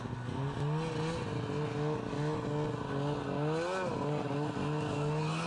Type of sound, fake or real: real